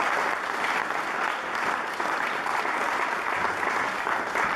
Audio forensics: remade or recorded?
recorded